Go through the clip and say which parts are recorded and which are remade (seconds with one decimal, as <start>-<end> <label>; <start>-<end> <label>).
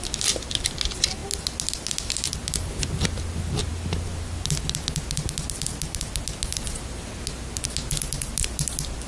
0.0-9.1 recorded